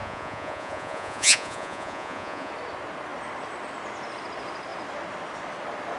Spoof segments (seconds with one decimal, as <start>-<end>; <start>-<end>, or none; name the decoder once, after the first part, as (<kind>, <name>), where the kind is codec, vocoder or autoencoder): 0.0-2.5 (vocoder, Vocos)